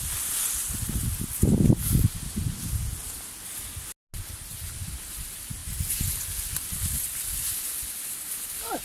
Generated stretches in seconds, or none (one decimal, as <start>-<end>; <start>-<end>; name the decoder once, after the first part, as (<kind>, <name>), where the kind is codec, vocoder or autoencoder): none